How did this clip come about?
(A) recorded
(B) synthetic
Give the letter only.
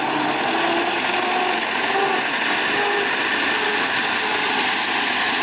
A